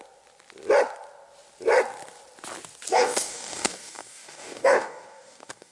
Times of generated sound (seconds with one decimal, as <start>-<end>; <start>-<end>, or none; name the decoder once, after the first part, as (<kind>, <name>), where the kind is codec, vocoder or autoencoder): 2.9-5.7 (codec, DAC)